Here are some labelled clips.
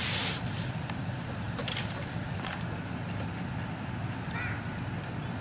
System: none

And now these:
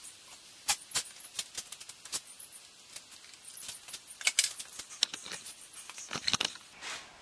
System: none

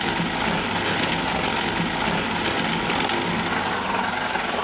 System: none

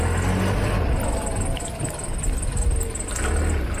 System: none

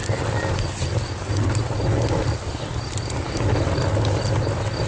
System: none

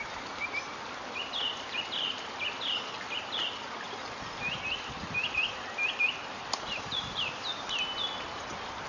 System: none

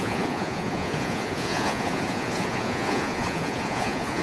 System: vocoder, Vocos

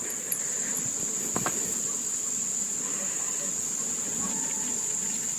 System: none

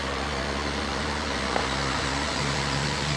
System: vocoder, Vocos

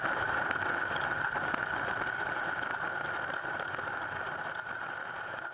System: none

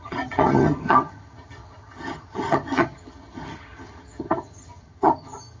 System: vocoder, HiFi-GAN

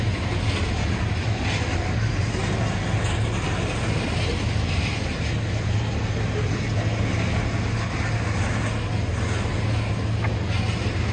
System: none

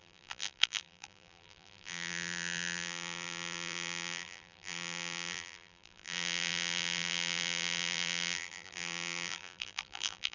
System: vocoder, BigVGAN v2